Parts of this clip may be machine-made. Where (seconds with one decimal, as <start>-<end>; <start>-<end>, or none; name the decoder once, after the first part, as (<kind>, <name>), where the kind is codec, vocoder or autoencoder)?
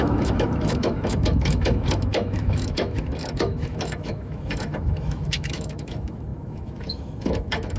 0.0-7.8 (autoencoder, DAC-VAE)